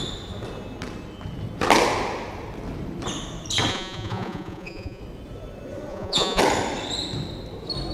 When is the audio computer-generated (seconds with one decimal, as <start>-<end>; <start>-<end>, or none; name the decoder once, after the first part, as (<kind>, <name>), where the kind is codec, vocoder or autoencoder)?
3.7-5.0 (vocoder, Vocos); 5.9-6.4